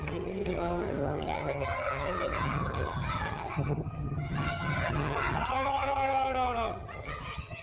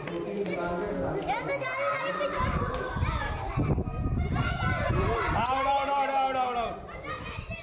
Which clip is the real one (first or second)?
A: second